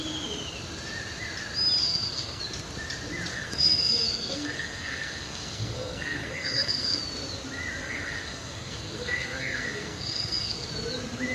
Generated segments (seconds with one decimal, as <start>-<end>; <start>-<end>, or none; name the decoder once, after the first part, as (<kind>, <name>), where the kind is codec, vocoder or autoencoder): 1.8-2.4 (codec, SNAC); 3.3-7.0; 7.8-10.7